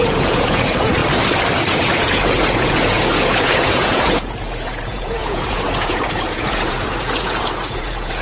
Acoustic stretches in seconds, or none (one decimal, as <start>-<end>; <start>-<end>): 1.0-1.7